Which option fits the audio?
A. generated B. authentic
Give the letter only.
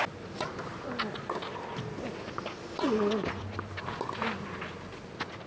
B